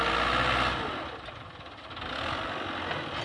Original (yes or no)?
yes